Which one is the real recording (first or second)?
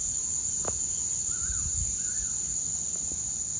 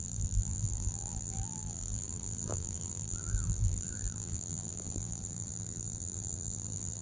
first